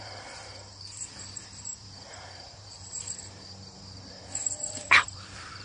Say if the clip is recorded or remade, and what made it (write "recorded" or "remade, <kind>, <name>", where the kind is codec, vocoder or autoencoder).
remade, vocoder, BigVGAN v2